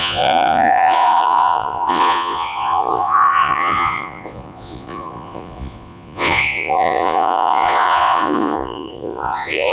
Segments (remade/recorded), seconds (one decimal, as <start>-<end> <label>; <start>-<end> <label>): 0.0-9.7 remade